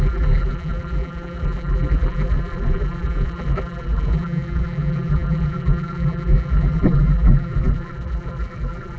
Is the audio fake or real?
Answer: fake